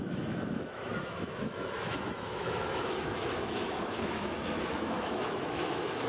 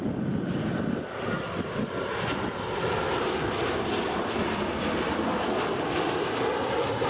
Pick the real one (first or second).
second